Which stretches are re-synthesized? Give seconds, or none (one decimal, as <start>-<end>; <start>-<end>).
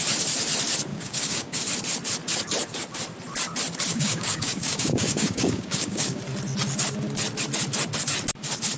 0.9-1.6; 3.9-6.2